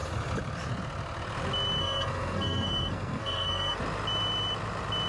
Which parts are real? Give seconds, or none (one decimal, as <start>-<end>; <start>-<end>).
0.0-1.8; 3.8-5.1

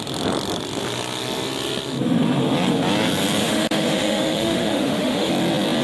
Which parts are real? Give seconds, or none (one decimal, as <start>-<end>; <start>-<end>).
0.0-3.4; 5.3-5.8

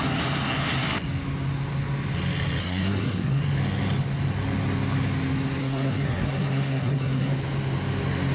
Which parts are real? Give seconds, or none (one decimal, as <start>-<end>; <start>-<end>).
0.0-2.6; 3.4-5.6; 7.3-8.3